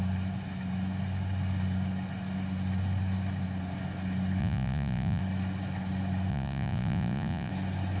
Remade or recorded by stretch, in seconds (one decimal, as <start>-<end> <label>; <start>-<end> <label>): 0.0-4.4 recorded; 4.4-5.2 remade; 5.2-6.3 recorded; 6.3-7.5 remade; 7.5-8.0 recorded